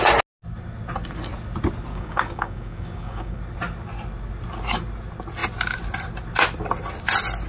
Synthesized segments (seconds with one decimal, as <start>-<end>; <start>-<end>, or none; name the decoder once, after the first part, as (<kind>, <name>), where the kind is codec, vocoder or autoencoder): 1.9-3.4 (codec, DAC)